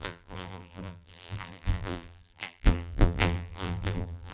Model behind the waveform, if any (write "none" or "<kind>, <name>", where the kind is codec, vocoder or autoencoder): vocoder, BigVGAN v2